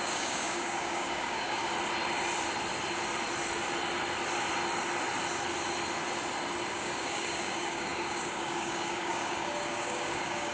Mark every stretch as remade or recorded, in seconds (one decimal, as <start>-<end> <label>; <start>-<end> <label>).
0.0-1.6 remade; 1.6-6.7 recorded; 6.7-10.5 remade